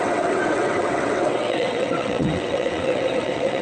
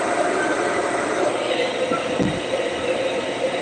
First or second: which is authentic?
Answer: second